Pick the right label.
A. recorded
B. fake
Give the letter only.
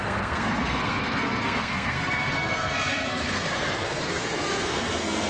B